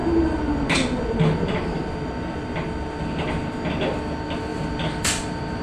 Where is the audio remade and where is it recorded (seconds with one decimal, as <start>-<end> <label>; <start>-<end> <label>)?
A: 0.0-3.4 remade; 3.4-4.5 recorded; 4.5-5.6 remade